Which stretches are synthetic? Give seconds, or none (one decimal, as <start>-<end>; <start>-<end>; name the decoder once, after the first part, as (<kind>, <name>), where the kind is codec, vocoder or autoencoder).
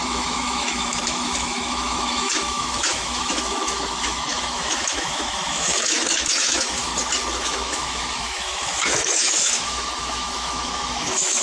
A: 0.0-6.9 (autoencoder, DAC-VAE); 7.4-11.4